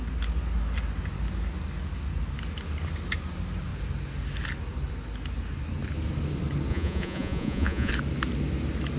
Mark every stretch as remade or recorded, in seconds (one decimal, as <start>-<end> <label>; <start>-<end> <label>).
0.0-6.7 recorded; 6.7-7.9 remade; 7.9-9.0 recorded